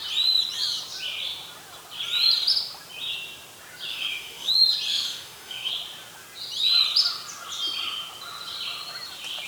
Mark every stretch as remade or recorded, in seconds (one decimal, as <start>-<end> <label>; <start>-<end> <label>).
0.0-3.9 recorded; 3.9-4.5 remade; 4.5-4.9 recorded; 4.9-5.7 remade; 5.7-9.5 recorded